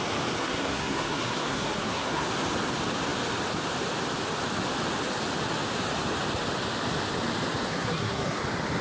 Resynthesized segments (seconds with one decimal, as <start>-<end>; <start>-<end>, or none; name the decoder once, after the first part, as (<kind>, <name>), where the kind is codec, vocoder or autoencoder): 0.4-2.3 (codec, SNAC); 7.7-8.4